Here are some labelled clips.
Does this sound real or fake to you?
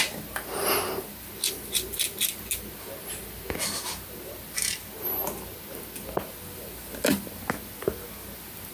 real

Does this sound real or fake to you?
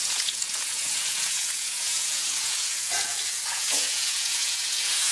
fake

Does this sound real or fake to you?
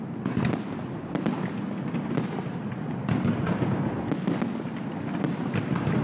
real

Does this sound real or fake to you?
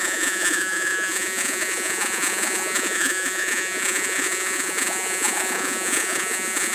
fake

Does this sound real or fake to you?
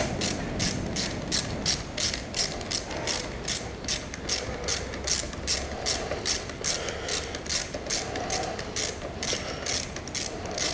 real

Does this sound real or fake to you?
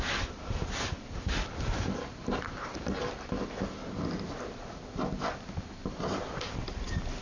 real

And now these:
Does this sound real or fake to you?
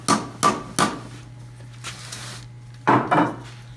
real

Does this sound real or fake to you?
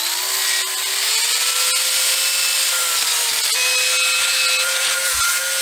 real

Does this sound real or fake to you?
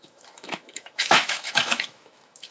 fake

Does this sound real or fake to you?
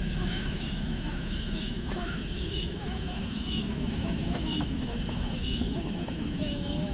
fake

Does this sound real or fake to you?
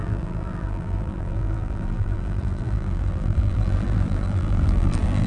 fake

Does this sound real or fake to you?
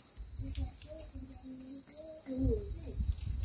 real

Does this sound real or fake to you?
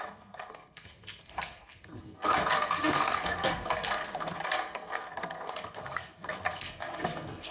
fake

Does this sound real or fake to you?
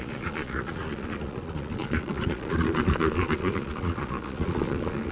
fake